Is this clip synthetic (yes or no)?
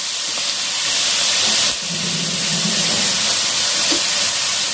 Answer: no